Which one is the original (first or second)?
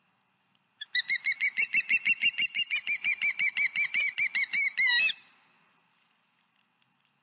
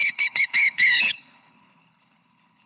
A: first